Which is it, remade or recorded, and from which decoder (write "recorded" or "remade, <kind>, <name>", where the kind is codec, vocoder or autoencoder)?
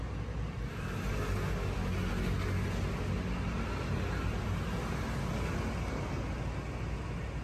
recorded